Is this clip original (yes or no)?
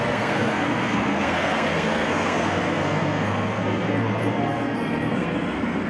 no